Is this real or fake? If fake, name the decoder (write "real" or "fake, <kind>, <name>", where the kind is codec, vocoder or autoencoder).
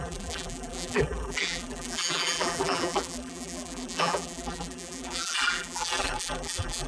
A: fake, vocoder, BigVGAN v2